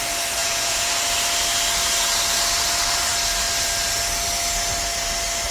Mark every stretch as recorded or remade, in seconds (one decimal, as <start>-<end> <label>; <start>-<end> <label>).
0.0-0.4 recorded; 0.4-1.1 remade; 1.1-5.5 recorded